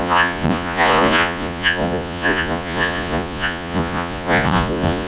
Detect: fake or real fake